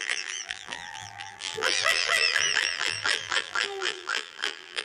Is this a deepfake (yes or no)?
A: yes